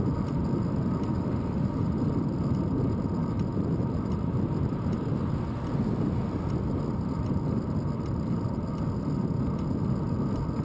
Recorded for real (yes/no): yes